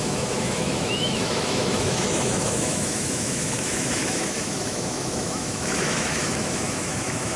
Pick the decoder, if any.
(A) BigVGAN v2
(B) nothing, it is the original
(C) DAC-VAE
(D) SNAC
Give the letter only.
C